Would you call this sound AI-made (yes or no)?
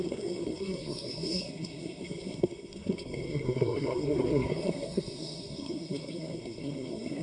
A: yes